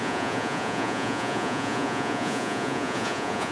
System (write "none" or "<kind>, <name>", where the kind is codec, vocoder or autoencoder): vocoder, Vocos